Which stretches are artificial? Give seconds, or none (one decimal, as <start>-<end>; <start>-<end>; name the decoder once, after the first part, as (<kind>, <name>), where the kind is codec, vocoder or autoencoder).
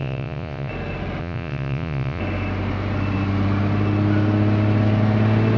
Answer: 0.0-0.7 (vocoder, Vocos); 1.2-2.2